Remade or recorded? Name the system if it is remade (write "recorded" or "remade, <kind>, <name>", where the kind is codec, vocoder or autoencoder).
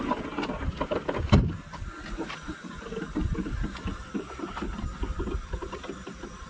recorded